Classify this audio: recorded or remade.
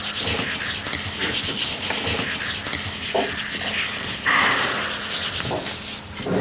recorded